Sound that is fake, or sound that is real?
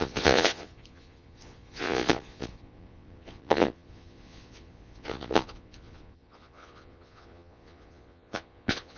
fake